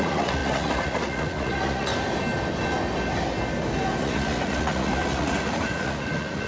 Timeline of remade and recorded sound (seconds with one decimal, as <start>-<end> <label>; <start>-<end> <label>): 0.0-1.9 remade; 1.9-4.0 recorded; 4.0-6.5 remade